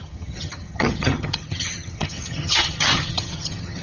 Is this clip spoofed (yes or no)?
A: yes